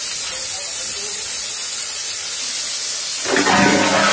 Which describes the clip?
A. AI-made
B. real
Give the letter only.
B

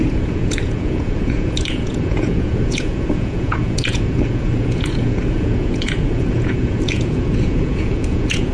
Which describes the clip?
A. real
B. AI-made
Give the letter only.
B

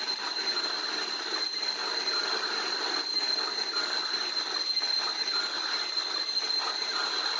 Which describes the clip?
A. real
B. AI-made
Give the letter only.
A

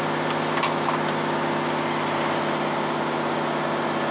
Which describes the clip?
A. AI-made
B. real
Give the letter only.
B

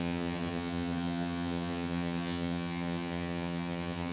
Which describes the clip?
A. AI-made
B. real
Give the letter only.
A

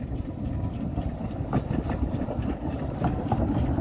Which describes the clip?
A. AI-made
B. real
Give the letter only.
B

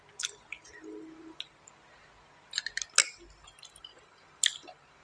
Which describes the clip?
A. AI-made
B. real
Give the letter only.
B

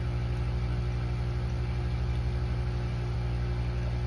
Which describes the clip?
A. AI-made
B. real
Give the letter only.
B